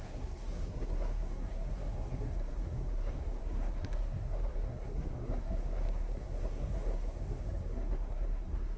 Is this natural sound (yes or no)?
no